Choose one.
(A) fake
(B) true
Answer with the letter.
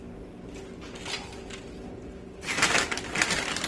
B